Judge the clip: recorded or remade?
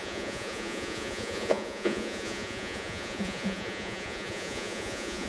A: remade